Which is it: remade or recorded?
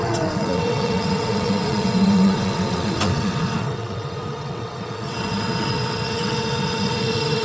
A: remade